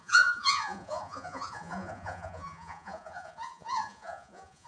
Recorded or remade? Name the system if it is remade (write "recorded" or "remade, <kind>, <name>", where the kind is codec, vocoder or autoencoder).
remade, vocoder, Vocos